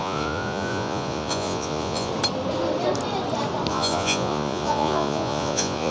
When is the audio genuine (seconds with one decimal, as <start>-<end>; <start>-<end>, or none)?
2.1-3.7